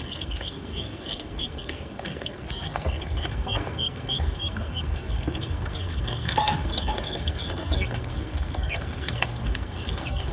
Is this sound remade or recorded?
remade